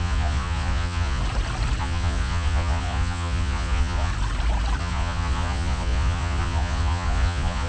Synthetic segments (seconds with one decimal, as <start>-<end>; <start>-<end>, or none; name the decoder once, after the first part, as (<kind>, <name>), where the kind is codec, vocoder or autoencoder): 0.0-1.2 (vocoder, Vocos); 1.8-4.1; 4.8-7.7